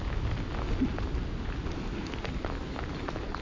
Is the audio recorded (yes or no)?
yes